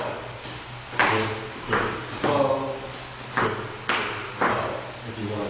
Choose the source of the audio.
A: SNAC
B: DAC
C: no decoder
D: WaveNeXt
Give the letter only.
C